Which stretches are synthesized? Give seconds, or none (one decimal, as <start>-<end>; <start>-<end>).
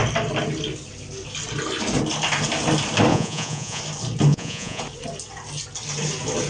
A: 3.1-3.8; 4.3-4.8